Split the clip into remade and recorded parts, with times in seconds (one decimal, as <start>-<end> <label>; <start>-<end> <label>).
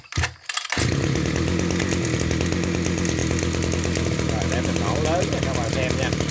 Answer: 0.0-6.3 recorded